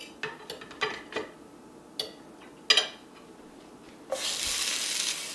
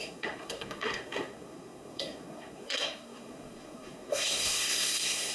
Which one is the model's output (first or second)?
second